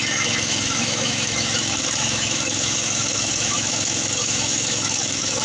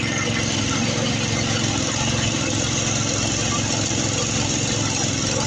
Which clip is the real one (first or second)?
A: second